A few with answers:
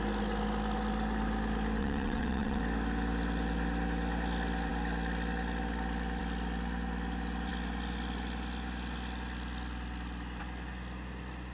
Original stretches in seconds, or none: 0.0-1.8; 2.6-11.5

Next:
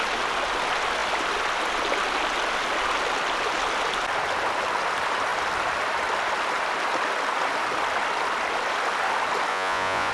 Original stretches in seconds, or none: 0.0-9.5

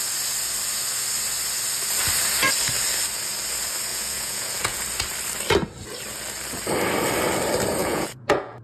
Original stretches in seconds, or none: 0.0-3.9; 4.8-7.8